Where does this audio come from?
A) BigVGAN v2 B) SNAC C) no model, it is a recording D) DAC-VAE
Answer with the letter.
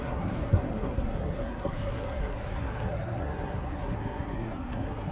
B